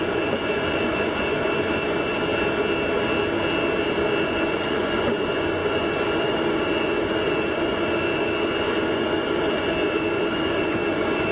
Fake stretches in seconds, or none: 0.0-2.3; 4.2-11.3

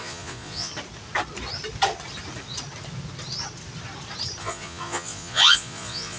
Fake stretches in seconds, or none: 0.0-0.7; 4.4-6.2

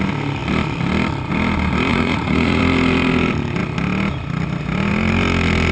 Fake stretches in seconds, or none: 1.9-2.6

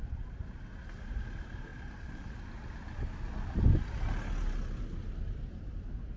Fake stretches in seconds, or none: none

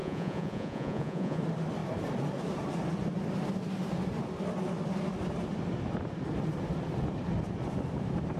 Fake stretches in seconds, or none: 0.0-1.4